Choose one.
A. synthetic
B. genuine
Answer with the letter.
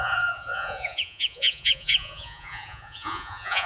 A